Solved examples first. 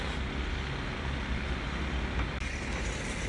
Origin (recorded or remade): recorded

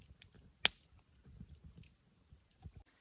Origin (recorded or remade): recorded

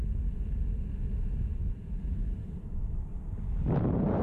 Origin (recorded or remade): recorded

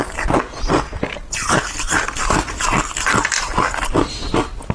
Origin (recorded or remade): recorded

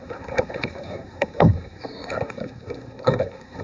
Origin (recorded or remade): remade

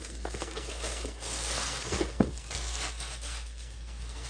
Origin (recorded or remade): remade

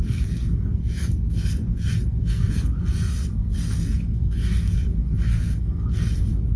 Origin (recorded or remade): remade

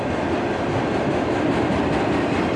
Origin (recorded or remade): recorded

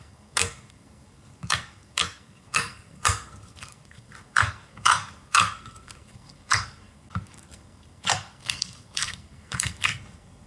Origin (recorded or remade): remade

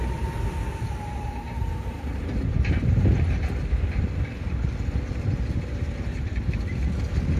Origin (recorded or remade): recorded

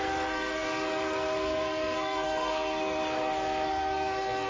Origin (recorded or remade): remade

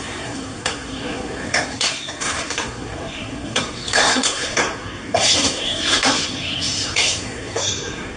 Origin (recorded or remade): remade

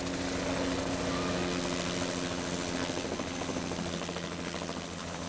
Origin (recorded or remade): recorded